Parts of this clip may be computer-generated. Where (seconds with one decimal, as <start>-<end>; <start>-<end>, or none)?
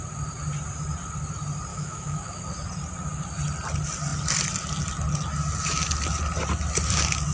1.7-2.4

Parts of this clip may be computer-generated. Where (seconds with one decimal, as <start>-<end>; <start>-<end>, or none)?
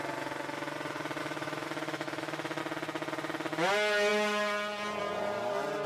1.2-2.6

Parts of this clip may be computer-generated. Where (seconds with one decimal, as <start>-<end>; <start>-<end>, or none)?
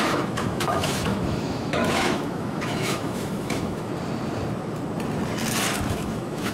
0.0-3.9; 5.9-6.5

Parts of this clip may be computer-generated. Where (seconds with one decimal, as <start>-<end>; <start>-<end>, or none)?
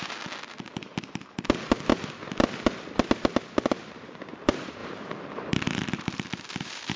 0.0-0.9; 3.9-7.0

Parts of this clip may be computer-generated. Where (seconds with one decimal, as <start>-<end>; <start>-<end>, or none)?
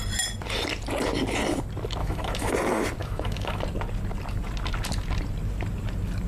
2.0-2.5; 3.0-3.6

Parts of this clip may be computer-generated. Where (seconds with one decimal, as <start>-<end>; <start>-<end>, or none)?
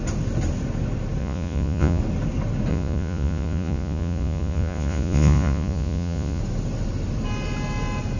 1.2-2.0; 2.7-6.4